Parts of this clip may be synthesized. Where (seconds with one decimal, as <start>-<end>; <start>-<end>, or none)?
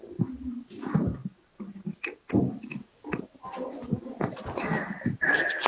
none